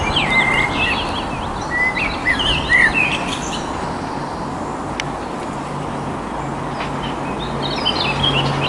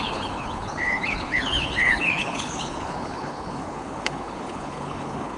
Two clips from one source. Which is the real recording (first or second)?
first